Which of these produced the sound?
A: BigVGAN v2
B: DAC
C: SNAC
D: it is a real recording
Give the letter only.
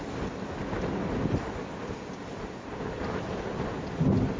D